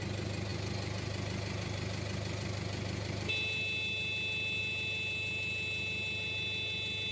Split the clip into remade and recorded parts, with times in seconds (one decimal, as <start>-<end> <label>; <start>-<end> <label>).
0.0-7.1 recorded